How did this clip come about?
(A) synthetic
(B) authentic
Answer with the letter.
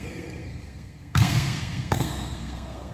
A